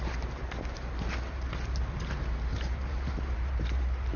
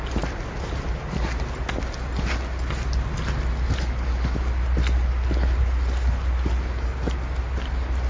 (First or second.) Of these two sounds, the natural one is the second